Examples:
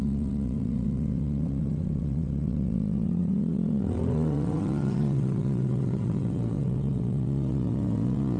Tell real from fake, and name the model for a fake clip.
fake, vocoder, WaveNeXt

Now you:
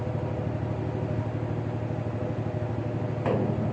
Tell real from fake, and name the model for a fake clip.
real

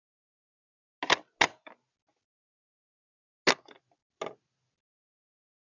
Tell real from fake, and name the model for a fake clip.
real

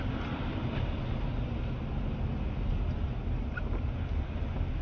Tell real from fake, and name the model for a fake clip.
real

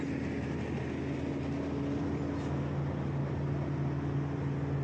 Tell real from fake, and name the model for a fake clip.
real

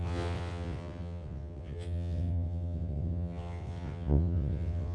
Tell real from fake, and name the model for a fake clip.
fake, vocoder, WaveNeXt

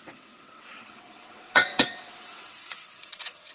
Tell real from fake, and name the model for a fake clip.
fake, vocoder, WaveNeXt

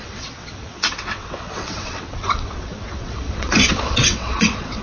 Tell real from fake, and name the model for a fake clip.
fake, vocoder, WaveNeXt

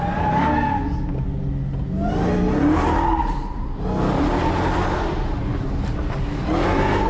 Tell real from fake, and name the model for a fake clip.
real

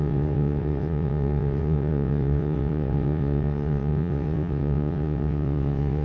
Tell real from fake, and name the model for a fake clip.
fake, vocoder, WaveNeXt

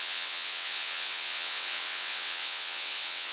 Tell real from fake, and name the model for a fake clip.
fake, vocoder, WaveNeXt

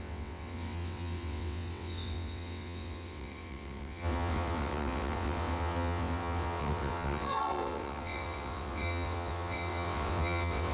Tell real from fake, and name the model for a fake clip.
fake, vocoder, WaveNeXt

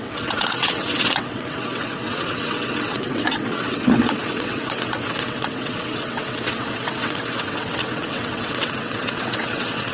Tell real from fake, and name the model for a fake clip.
fake, vocoder, WaveNeXt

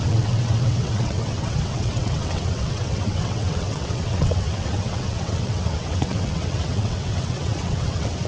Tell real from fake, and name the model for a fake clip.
fake, vocoder, WaveNeXt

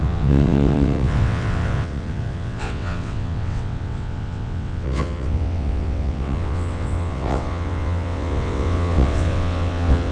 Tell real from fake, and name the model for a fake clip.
fake, vocoder, WaveNeXt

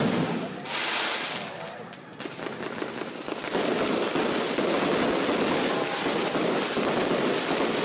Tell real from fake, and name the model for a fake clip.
real